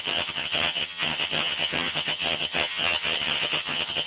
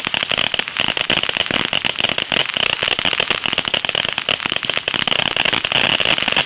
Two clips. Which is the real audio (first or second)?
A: second